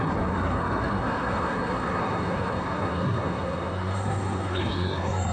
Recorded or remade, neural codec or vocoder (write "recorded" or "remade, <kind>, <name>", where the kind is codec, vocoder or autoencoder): remade, codec, SNAC